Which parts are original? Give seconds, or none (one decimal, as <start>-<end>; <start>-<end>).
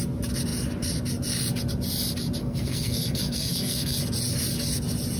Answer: 0.0-2.4; 4.0-5.2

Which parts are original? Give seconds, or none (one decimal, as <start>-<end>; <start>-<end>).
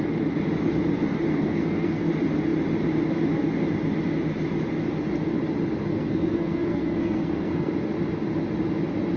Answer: 0.0-1.3; 2.1-5.9; 7.7-9.2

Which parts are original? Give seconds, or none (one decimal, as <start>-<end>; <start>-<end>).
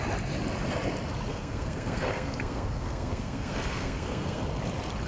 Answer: 0.0-1.3; 4.4-5.1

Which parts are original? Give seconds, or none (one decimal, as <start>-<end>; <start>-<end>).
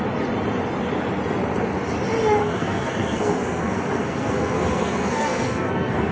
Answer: 0.0-2.4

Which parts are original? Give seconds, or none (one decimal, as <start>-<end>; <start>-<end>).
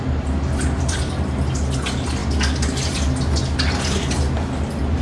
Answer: 0.0-5.0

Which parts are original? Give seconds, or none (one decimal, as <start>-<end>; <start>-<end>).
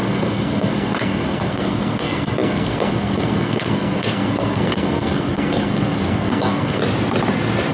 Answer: 6.8-7.7